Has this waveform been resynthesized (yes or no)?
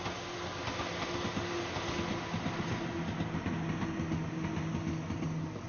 no